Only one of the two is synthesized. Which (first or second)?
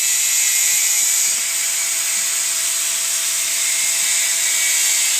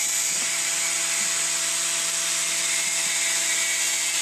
second